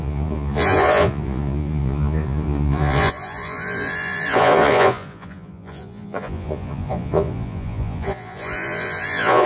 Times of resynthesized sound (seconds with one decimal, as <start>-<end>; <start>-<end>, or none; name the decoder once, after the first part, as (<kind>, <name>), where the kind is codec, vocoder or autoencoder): 0.0-9.5 (vocoder, Vocos)